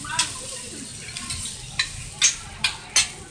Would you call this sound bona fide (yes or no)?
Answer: yes